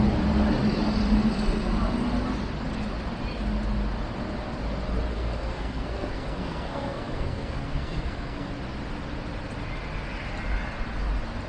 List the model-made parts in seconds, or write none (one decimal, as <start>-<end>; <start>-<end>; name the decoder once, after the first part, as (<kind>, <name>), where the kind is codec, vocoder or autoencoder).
5.1-8.5 (codec, SNAC)